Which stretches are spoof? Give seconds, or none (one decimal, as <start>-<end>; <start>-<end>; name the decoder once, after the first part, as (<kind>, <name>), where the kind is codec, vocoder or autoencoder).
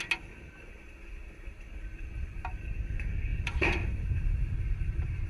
1.9-2.5 (vocoder, BigVGAN v2); 3.3-5.3